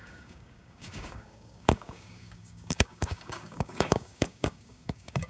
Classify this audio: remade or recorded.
remade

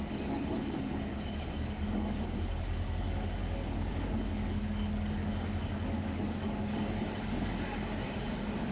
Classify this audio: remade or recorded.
remade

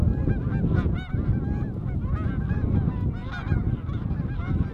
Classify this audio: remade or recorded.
recorded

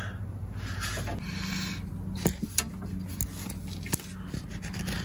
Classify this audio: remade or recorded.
recorded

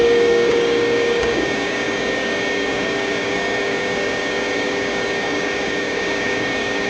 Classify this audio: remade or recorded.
remade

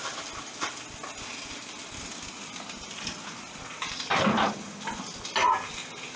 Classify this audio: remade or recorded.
recorded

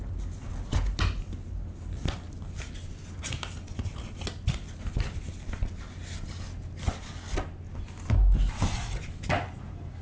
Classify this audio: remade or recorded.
recorded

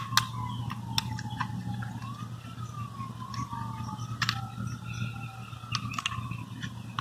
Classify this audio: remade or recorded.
recorded